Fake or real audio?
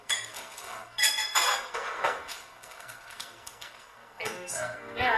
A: fake